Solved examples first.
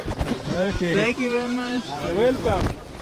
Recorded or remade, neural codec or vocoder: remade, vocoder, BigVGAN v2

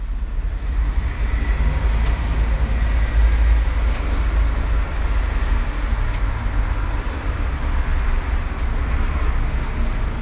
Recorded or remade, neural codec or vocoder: recorded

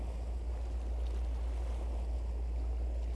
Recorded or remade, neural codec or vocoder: recorded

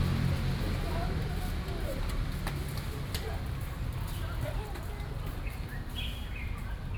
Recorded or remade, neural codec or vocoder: recorded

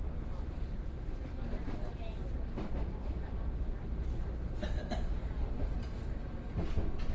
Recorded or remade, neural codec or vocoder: recorded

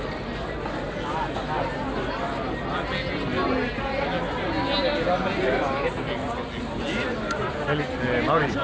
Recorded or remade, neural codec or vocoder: recorded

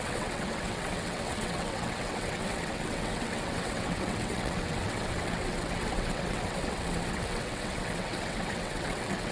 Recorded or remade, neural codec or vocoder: remade, vocoder, WaveNeXt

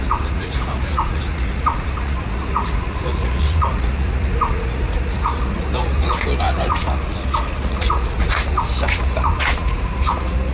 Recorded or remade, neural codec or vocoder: remade, vocoder, Vocos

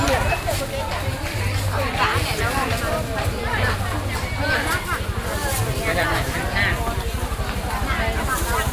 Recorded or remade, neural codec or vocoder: recorded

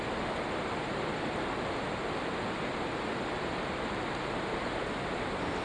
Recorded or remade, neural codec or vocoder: recorded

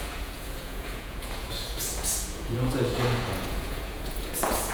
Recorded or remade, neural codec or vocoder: remade, vocoder, Vocos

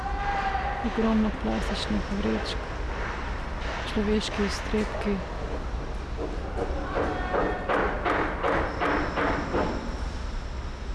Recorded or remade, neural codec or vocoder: recorded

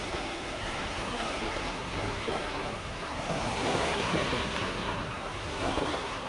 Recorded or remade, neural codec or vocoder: remade, codec, SNAC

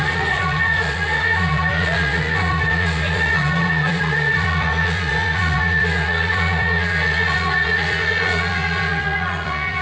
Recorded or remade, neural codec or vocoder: remade, vocoder, Vocos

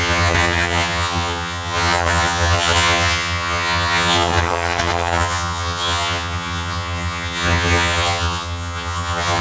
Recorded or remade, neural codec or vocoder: remade, vocoder, HiFi-GAN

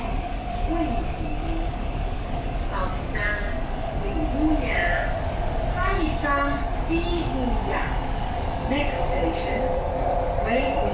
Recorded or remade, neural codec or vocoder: remade, codec, DAC